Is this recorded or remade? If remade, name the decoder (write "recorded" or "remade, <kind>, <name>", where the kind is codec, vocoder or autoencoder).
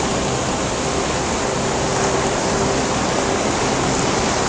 recorded